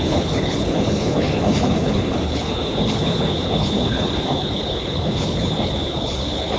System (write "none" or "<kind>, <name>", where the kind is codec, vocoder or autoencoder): codec, HILCodec